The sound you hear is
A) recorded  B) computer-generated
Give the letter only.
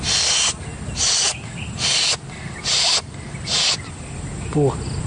A